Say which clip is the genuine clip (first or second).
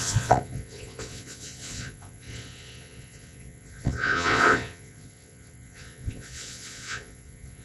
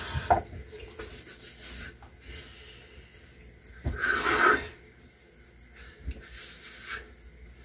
second